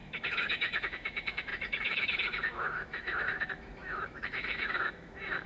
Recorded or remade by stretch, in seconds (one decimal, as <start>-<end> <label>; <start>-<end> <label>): 0.0-5.5 remade